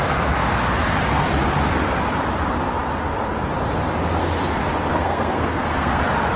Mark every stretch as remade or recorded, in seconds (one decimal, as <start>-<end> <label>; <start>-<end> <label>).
0.0-5.0 recorded; 5.0-6.0 remade; 6.0-6.4 recorded